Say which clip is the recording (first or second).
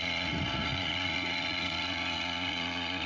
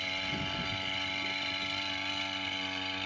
second